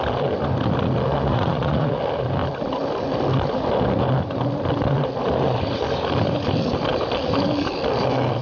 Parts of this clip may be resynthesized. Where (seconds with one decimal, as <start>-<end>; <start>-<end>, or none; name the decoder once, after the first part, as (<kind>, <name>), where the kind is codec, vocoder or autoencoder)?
1.3-2.0 (vocoder, Vocos)